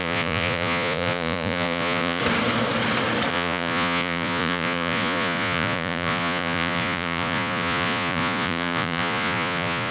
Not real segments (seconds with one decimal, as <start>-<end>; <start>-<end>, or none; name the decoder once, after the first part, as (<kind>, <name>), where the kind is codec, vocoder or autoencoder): 0.0-2.2 (vocoder, Vocos); 3.3-9.9